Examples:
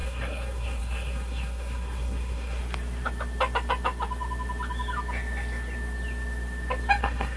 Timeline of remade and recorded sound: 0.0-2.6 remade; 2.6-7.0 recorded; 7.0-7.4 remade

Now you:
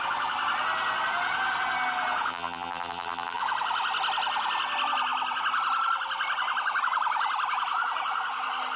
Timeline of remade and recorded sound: 0.0-2.3 recorded; 2.3-3.4 remade; 3.4-8.8 recorded